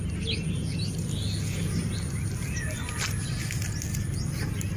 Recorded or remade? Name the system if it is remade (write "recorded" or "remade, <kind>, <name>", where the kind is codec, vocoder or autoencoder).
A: recorded